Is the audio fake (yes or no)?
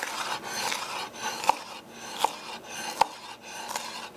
no